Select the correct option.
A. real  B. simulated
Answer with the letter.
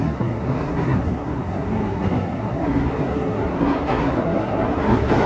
B